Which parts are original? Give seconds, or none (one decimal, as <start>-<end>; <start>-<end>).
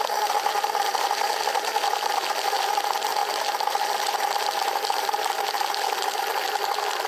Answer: 0.0-3.2; 4.4-7.1